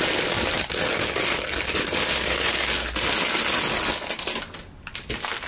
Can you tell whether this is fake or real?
real